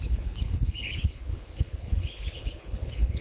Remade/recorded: remade